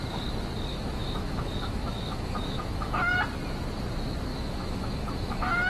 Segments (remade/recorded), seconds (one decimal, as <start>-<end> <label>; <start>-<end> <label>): 0.0-0.7 recorded; 0.7-3.2 remade; 3.2-4.3 recorded; 4.3-5.7 remade